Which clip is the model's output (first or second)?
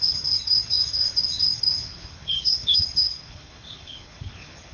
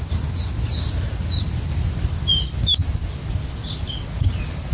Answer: first